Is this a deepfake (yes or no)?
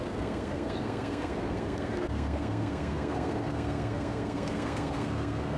yes